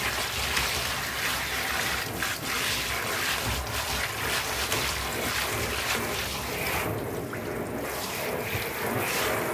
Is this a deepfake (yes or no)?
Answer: no